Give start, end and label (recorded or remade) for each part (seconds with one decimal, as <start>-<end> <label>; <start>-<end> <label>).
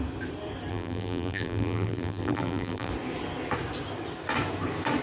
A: 0.0-0.7 recorded; 0.7-2.9 remade; 2.9-5.0 recorded